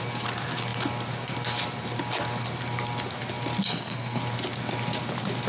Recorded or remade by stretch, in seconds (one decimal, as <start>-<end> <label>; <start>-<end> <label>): 0.0-3.7 recorded; 3.7-4.2 remade; 4.2-5.5 recorded